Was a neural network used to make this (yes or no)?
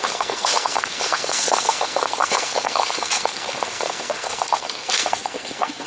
yes